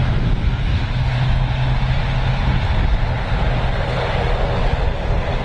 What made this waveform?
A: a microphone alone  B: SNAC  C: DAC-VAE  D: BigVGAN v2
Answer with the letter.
A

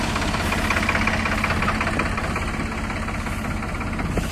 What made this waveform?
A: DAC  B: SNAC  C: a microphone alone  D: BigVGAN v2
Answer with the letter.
C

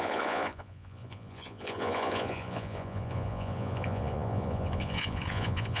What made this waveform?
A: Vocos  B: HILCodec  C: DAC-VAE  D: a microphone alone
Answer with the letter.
A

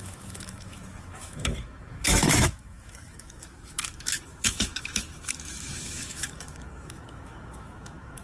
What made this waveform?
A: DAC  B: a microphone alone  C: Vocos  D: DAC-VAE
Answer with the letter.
D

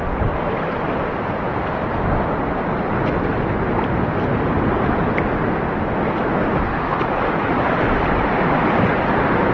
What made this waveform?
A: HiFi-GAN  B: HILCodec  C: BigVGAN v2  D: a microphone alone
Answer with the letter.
D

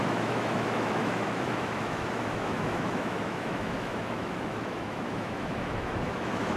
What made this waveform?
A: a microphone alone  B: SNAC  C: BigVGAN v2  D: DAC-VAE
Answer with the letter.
D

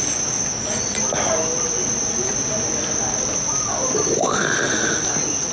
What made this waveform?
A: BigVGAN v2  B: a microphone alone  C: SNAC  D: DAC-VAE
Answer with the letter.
B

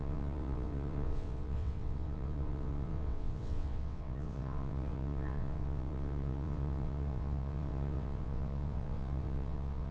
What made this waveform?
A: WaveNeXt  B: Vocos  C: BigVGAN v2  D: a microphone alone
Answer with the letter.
A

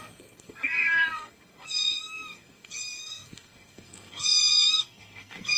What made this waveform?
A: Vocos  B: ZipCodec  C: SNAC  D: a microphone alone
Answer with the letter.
C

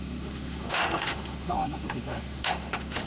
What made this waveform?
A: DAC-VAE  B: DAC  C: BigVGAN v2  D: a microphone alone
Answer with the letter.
A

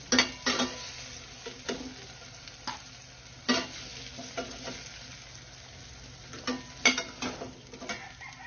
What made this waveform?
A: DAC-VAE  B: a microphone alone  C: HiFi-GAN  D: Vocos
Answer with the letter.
B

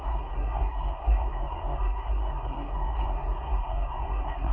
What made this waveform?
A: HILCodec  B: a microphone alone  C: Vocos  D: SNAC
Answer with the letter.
D